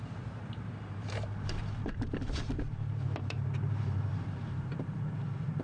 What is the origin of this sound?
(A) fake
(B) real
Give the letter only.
A